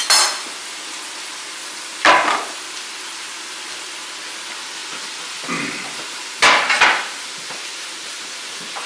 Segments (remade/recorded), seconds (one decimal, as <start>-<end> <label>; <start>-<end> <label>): 0.0-8.9 recorded